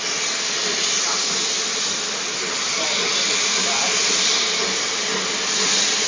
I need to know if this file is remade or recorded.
recorded